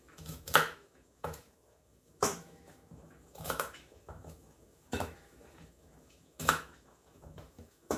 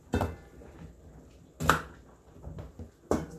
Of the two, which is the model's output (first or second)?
first